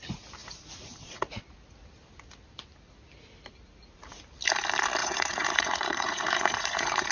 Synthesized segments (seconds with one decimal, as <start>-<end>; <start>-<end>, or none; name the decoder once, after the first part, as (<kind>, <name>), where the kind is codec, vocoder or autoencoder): 0.4-1.4 (vocoder, Vocos); 5.0-7.1